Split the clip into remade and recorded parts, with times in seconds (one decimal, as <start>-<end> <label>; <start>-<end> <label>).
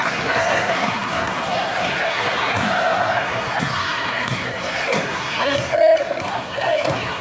0.0-7.2 remade